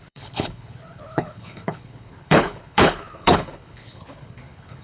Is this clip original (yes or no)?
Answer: no